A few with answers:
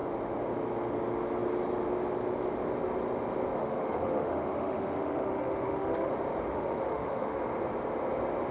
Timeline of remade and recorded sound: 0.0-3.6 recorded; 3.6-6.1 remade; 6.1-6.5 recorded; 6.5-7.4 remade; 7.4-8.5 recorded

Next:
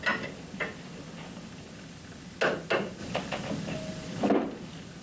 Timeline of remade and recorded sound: 0.0-3.0 recorded; 3.0-4.3 remade; 4.3-5.0 recorded

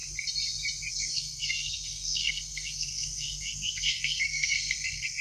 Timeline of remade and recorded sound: 0.0-0.9 recorded; 0.9-5.2 remade

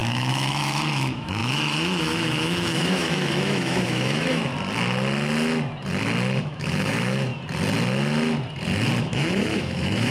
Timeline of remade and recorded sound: 0.0-4.5 remade; 4.5-6.4 recorded; 6.4-7.3 remade; 7.3-9.0 recorded; 9.0-10.1 remade

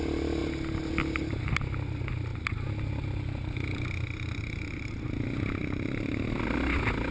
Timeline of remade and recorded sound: 0.0-7.1 recorded

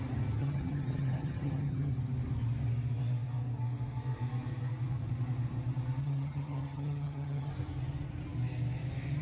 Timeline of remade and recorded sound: 0.0-0.4 recorded; 0.4-1.9 remade; 1.9-6.0 recorded; 6.0-7.5 remade; 7.5-9.2 recorded

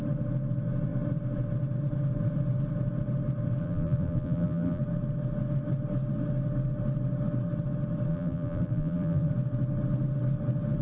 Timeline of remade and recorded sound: 0.0-3.6 recorded; 3.6-4.8 remade; 4.8-8.1 recorded; 8.1-9.3 remade; 9.3-10.8 recorded